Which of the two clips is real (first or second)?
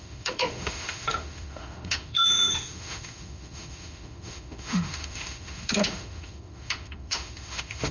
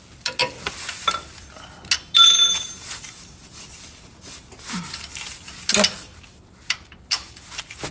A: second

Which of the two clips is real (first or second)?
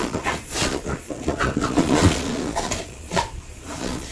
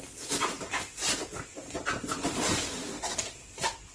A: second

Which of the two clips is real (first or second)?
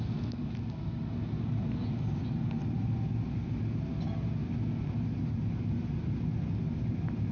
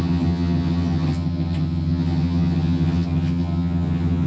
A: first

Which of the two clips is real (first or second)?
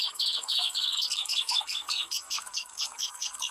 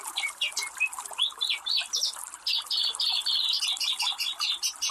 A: second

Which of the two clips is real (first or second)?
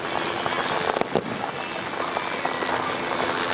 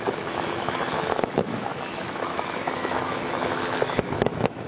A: first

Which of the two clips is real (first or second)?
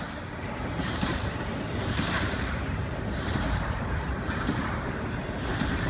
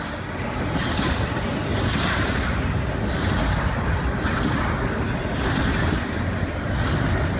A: second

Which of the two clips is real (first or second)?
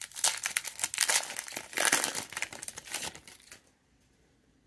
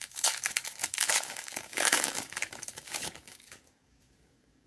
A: first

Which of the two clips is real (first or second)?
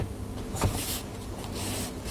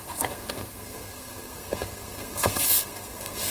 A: first